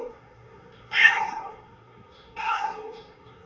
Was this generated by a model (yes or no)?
yes